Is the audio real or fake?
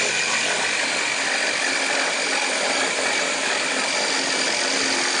real